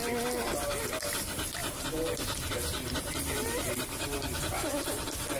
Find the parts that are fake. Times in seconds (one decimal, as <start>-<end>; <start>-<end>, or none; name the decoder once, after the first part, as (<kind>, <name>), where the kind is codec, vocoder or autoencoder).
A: 1.1-5.4 (vocoder, BigVGAN v2)